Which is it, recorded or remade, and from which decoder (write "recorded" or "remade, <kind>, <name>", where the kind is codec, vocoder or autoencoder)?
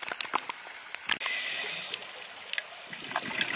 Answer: recorded